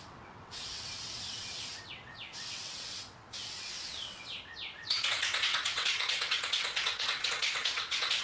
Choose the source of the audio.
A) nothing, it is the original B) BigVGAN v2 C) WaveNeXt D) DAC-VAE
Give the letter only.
C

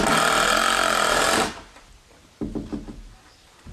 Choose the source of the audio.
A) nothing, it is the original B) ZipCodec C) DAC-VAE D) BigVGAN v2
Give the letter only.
A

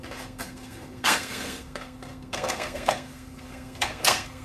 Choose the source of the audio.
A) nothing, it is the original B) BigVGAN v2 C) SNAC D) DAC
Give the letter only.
C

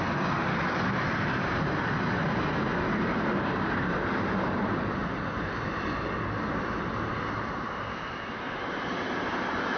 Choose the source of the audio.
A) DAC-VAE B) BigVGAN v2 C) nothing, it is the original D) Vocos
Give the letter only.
B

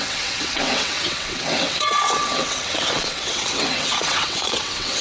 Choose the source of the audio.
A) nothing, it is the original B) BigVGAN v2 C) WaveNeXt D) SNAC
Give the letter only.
C